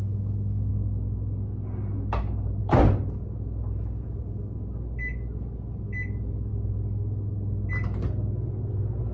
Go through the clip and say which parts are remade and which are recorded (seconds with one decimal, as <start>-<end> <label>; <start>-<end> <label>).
0.0-9.1 recorded